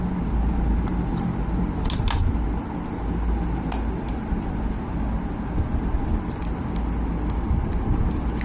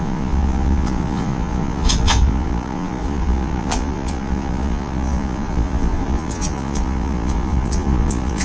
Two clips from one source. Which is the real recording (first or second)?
first